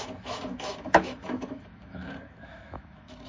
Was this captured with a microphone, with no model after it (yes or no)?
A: no